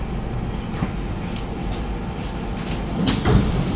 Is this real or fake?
real